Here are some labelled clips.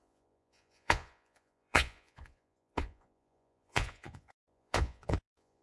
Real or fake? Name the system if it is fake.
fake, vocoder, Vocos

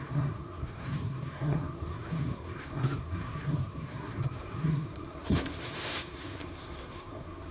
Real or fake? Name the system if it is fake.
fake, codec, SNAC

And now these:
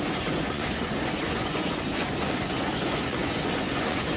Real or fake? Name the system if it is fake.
fake, vocoder, Vocos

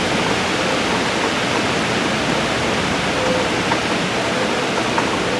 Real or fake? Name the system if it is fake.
real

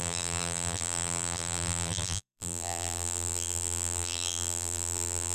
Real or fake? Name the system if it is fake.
fake, vocoder, BigVGAN v2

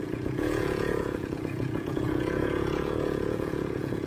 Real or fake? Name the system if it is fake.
fake, vocoder, Vocos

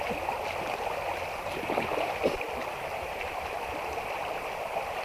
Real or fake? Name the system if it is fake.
real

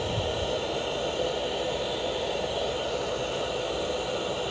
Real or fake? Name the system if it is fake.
real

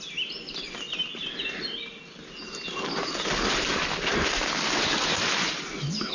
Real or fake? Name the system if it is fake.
real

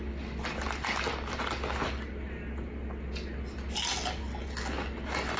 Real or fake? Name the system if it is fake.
real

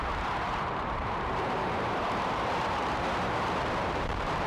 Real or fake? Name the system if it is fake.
fake, vocoder, BigVGAN v2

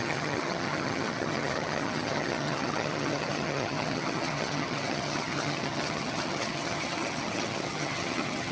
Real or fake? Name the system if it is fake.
fake, vocoder, HiFi-GAN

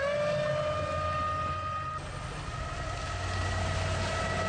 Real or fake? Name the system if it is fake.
real